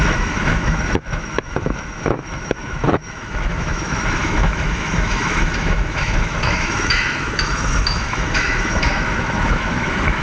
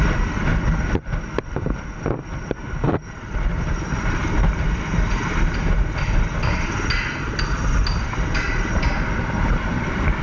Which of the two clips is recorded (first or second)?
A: second